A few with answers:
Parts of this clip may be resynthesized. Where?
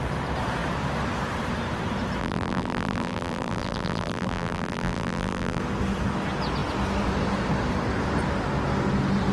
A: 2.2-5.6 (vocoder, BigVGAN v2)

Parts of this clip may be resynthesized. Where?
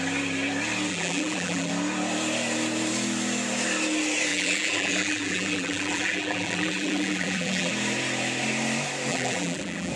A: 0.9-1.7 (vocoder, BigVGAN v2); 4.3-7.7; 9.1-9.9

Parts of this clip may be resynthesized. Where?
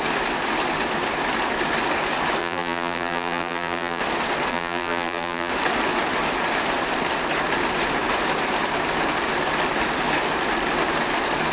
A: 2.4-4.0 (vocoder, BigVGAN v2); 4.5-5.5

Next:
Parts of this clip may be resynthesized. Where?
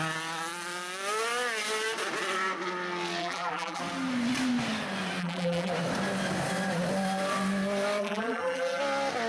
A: 3.2-3.8 (vocoder, BigVGAN v2); 5.2-5.7; 8.0-8.8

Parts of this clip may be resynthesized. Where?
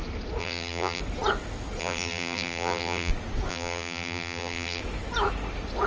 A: 0.4-1.0 (vocoder, BigVGAN v2); 1.8-3.1; 3.5-4.8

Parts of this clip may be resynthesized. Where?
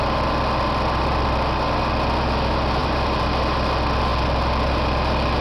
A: 2.8-3.4 (vocoder, BigVGAN v2)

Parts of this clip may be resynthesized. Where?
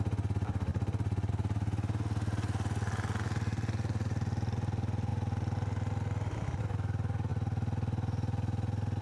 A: 0.7-1.3 (vocoder, BigVGAN v2)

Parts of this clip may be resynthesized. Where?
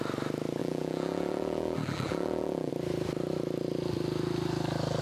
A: 0.6-2.7 (vocoder, BigVGAN v2)